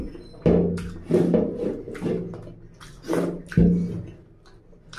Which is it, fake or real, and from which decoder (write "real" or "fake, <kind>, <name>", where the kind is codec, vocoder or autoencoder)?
real